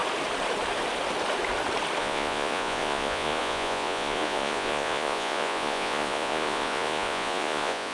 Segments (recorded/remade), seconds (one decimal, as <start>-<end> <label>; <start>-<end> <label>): 0.0-2.0 recorded; 2.0-7.9 remade